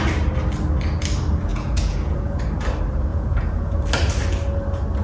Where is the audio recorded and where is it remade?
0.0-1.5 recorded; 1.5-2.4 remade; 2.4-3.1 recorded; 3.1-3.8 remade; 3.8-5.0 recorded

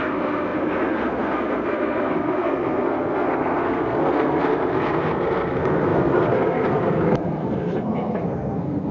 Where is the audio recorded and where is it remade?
0.0-8.9 remade

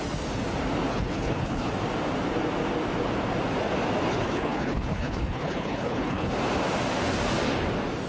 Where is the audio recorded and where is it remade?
0.0-0.9 recorded; 0.9-1.7 remade; 1.7-4.1 recorded; 4.1-6.3 remade; 6.3-8.1 recorded

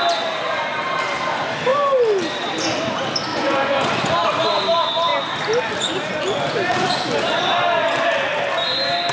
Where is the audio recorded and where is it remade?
0.0-3.3 recorded; 3.3-4.1 remade; 4.1-9.1 recorded